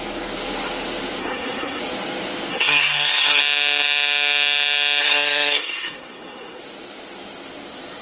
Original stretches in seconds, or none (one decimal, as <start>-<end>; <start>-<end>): 0.0-1.2; 1.8-2.5; 3.4-5.0; 6.6-8.0